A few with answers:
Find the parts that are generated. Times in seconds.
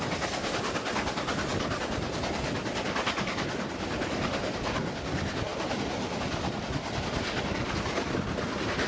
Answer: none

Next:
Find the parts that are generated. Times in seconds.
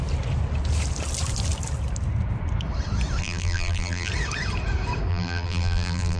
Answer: 3.2-4.1 (vocoder, BigVGAN v2); 5.1-6.2